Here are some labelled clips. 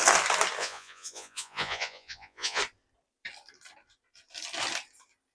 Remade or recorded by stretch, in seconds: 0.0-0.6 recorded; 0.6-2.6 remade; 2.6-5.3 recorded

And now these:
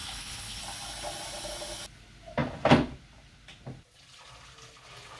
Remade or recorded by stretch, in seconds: 0.0-0.6 remade; 0.6-5.2 recorded

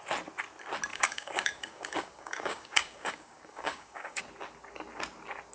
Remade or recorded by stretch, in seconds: 0.0-0.9 recorded; 0.9-4.2 remade; 4.2-5.5 recorded

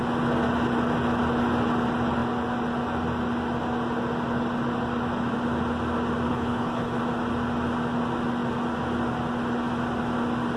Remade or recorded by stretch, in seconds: 0.0-6.3 recorded; 6.3-7.0 remade; 7.0-10.6 recorded

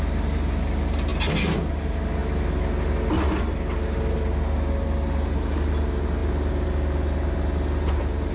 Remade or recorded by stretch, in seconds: 0.0-8.3 recorded